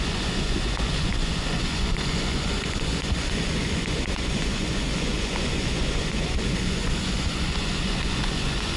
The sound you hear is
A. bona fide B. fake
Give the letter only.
B